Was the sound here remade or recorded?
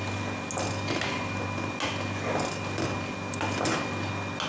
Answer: recorded